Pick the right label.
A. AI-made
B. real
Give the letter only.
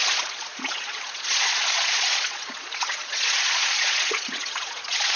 A